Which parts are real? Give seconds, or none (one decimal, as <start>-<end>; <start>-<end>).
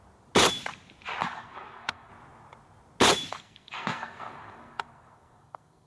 0.0-1.2; 2.1-3.3